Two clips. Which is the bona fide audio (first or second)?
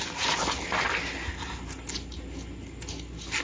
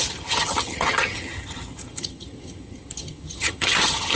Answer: first